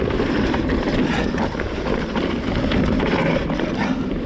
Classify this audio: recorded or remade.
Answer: recorded